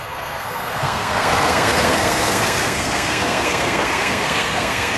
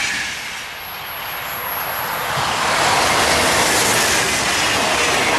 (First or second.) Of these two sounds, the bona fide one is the second